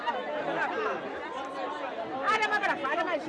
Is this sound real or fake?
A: real